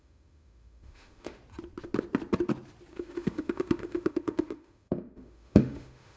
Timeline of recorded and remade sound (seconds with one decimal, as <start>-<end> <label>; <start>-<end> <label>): 0.0-1.4 remade; 1.4-2.9 recorded; 2.9-6.2 remade